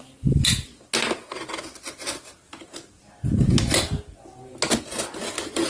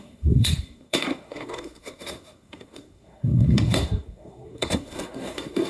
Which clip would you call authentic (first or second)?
first